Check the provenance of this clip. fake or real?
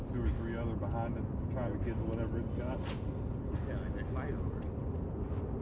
real